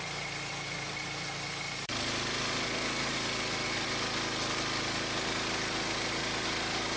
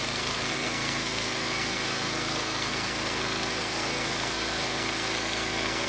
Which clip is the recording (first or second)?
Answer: first